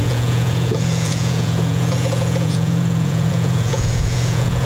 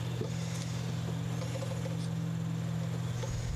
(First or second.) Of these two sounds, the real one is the second